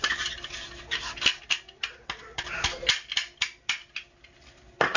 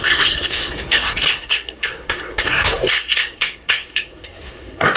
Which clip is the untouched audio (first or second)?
first